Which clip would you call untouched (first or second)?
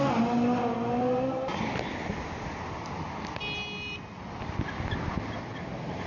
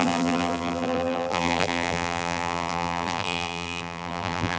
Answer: first